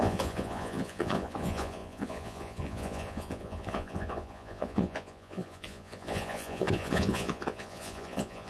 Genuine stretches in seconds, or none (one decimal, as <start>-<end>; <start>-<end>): none